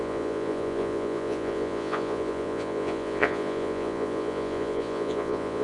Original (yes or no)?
no